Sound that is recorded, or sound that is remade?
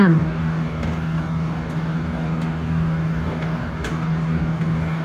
remade